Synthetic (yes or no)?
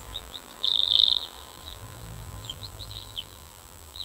yes